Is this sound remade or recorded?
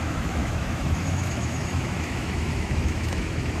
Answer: remade